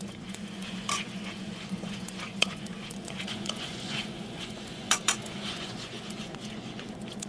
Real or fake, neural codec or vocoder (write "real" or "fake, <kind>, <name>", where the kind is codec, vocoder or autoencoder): fake, vocoder, Vocos